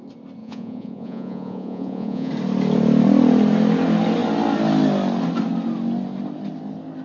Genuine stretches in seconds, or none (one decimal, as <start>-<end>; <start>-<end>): 0.0-0.4; 2.3-7.0